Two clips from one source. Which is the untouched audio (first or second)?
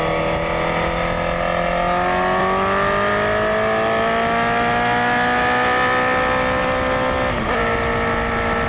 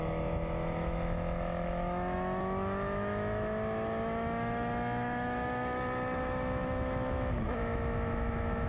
first